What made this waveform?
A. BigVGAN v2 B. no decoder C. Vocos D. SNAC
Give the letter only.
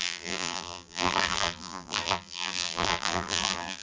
A